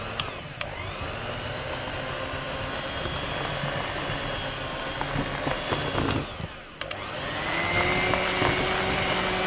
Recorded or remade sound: recorded